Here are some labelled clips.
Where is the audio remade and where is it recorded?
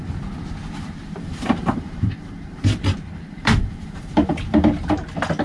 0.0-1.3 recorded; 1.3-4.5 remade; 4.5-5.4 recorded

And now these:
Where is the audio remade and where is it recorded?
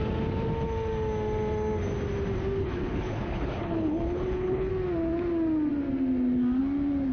0.0-2.6 recorded; 2.6-4.7 remade; 4.7-7.1 recorded